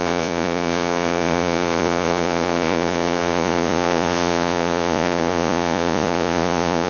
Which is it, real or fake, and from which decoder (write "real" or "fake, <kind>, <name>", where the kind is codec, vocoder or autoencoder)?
fake, vocoder, Vocos